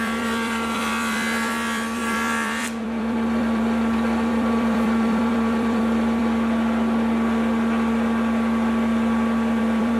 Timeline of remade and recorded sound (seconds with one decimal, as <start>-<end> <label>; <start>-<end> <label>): 0.0-6.2 remade; 6.2-9.6 recorded; 9.6-10.0 remade